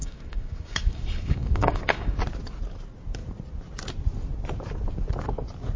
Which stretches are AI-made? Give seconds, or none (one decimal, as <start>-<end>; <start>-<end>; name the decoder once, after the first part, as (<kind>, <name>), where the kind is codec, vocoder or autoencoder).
0.0-2.2 (codec, DAC)